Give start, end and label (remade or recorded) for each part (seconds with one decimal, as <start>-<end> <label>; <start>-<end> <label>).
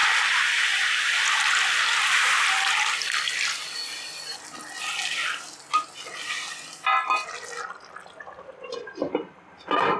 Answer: 0.0-10.0 recorded